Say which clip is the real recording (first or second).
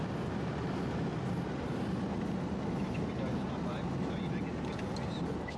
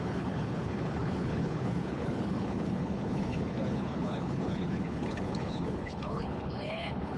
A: first